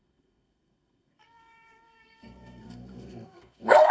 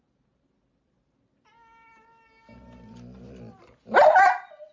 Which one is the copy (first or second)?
first